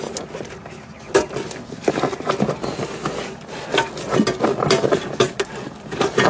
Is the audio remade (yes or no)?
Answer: no